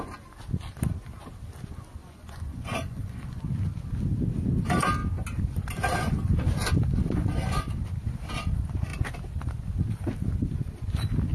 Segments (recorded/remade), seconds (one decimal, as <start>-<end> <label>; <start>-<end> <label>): 0.0-2.0 recorded; 2.0-3.4 remade; 3.4-11.3 recorded